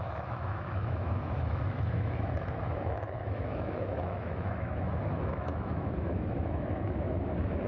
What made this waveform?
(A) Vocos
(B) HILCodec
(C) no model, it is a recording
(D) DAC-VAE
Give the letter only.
D